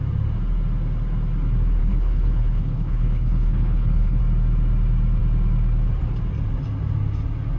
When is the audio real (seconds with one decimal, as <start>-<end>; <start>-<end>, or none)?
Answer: 0.0-1.8; 4.2-7.6